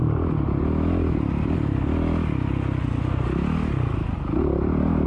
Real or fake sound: real